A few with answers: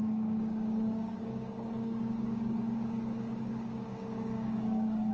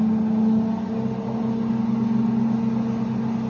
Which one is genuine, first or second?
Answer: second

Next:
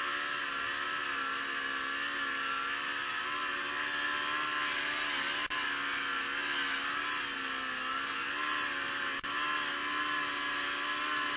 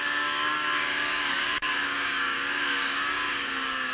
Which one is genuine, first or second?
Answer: first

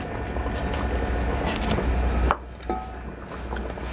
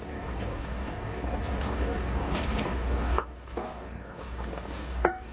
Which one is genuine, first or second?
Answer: first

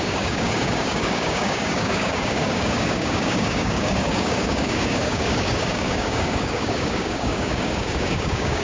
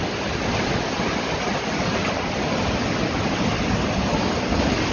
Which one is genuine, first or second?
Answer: second